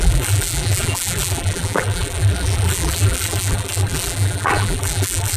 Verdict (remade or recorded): remade